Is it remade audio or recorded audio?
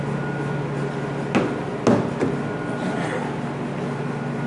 recorded